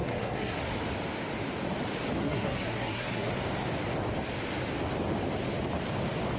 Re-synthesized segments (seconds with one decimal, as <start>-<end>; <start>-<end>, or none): 0.0-0.6; 2.2-3.3